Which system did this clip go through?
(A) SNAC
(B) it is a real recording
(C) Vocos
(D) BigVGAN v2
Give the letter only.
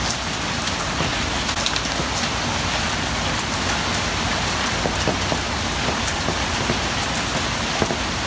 B